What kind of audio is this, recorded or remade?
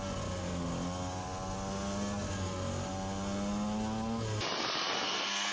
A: recorded